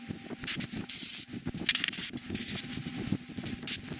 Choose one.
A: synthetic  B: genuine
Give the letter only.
B